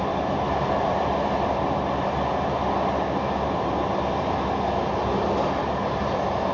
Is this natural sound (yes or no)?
yes